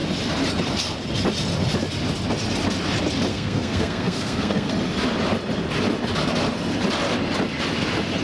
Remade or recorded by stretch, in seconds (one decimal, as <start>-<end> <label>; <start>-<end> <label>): 0.0-3.3 recorded; 3.3-4.7 remade; 4.7-8.2 recorded